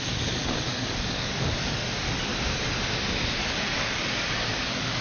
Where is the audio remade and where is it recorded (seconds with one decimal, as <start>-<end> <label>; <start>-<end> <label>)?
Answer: 0.0-2.3 remade; 2.3-3.4 recorded; 3.4-5.0 remade